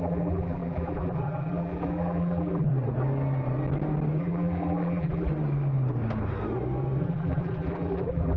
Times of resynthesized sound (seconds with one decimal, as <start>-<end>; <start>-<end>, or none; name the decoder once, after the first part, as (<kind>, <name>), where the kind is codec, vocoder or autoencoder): 0.0-2.7 (vocoder, BigVGAN v2); 4.2-5.3; 7.0-8.4